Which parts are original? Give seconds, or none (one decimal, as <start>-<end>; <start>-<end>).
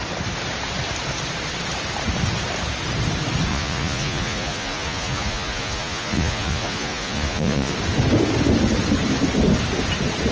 0.0-3.5; 7.7-10.3